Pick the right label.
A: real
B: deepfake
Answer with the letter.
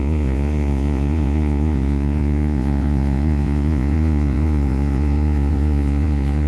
B